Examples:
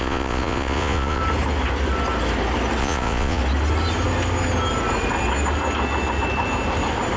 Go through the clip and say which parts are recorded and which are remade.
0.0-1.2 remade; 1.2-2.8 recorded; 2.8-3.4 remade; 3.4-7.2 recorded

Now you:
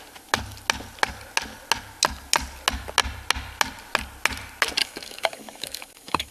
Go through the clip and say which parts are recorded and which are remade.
0.0-4.8 recorded; 4.8-6.3 remade

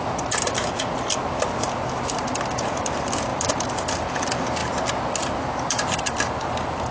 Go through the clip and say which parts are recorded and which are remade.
0.0-6.9 recorded

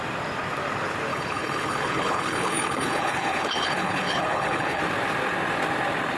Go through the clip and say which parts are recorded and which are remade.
0.0-1.1 recorded; 1.1-4.8 remade; 4.8-6.2 recorded

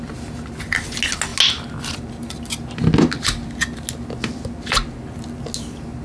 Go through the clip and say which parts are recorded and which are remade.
0.0-6.0 recorded

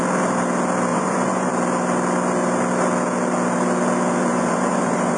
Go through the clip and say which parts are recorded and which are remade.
0.0-0.9 recorded; 0.9-1.5 remade; 1.5-4.3 recorded; 4.3-5.2 remade